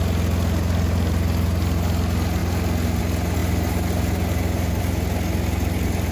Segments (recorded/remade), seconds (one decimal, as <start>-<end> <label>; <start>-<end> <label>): 0.0-6.1 recorded